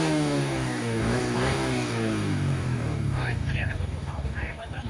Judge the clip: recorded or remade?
remade